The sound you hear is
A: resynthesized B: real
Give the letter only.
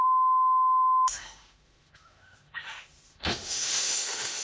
A